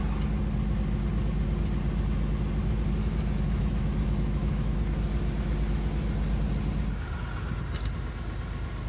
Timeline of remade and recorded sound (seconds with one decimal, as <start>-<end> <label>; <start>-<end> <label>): 0.0-3.0 recorded; 3.0-4.7 remade; 4.7-8.9 recorded